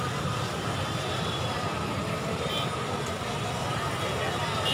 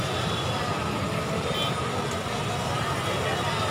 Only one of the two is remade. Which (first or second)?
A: first